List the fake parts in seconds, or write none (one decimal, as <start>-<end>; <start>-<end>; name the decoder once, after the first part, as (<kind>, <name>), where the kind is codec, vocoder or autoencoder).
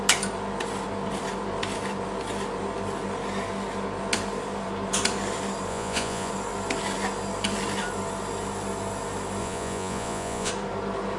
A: 5.7-6.3 (vocoder, Vocos); 9.4-10.5